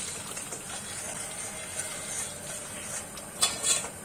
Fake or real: real